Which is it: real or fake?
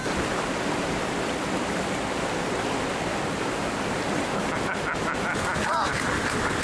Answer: real